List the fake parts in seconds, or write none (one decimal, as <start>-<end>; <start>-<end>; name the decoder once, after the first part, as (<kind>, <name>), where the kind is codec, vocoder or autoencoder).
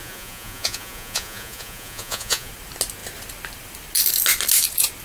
0.0-2.5 (vocoder, Vocos)